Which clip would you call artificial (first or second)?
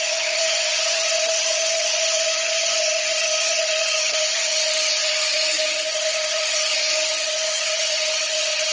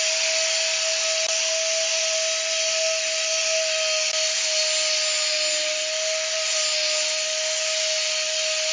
first